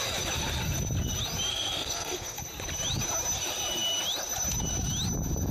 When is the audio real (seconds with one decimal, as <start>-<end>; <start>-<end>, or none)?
0.0-1.5; 2.4-5.5